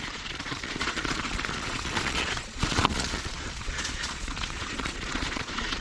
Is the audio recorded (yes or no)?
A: no